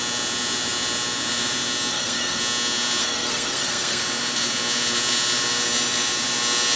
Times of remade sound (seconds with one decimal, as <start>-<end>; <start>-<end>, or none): 1.9-2.4; 3.0-4.0